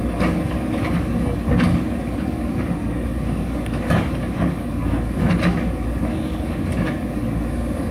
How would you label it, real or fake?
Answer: fake